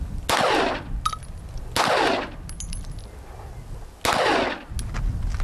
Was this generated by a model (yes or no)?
no